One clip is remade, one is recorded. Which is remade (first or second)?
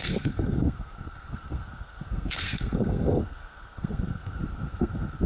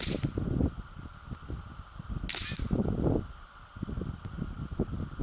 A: first